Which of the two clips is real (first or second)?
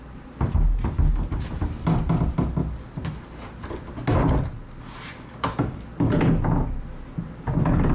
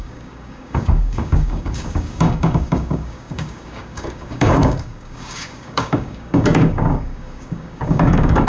first